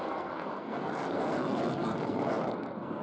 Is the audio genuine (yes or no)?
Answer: no